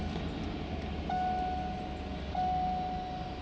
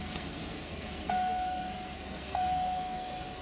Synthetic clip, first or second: second